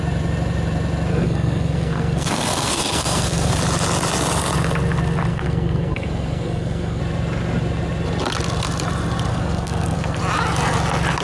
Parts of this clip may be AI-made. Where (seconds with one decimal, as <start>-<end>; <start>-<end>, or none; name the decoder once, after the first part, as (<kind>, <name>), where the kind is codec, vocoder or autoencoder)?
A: 1.1-3.5 (codec, SNAC); 5.3-7.0; 9.3-10.2